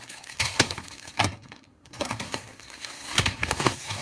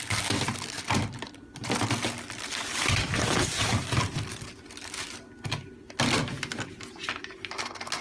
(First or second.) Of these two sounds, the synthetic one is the first